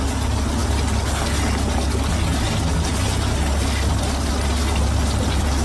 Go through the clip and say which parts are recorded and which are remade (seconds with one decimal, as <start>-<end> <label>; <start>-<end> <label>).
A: 0.0-5.6 recorded